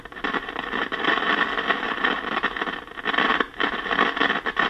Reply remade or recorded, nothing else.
recorded